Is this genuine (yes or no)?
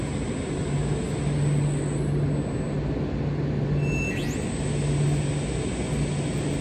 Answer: yes